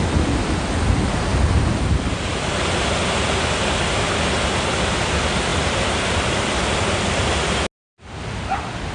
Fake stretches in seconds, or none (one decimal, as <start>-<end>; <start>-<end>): none